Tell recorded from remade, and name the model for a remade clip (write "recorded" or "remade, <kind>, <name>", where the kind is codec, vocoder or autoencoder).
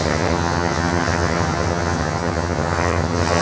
remade, vocoder, HiFi-GAN